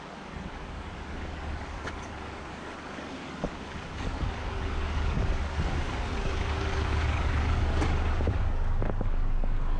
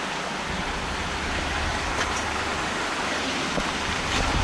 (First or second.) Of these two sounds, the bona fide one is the second